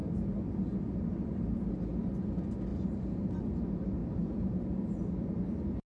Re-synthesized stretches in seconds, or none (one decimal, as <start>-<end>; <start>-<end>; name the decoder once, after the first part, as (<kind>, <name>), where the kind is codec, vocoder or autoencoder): 2.7-3.3 (vocoder, BigVGAN v2); 4.0-4.9